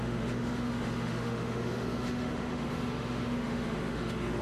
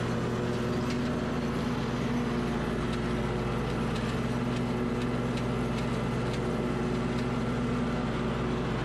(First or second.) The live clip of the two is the second